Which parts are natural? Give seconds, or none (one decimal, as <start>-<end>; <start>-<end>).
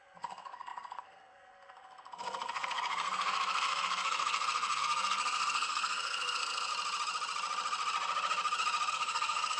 6.7-8.9